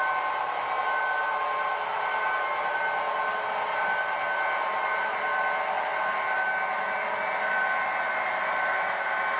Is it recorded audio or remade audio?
recorded